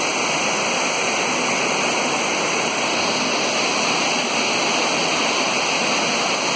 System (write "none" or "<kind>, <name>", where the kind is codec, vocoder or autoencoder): none